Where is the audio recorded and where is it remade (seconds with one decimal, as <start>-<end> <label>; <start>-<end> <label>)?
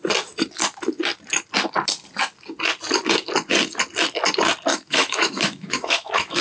0.0-4.7 recorded; 4.7-6.4 remade